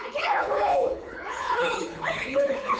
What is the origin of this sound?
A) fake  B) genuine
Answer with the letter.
A